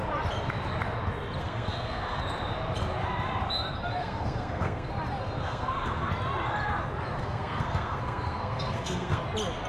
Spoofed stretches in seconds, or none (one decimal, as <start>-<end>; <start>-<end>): 1.4-2.2; 4.0-4.9; 5.4-6.1; 7.2-9.2